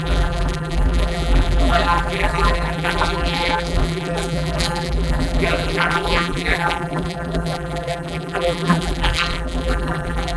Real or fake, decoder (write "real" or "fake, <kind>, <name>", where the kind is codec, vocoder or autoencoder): fake, vocoder, BigVGAN v2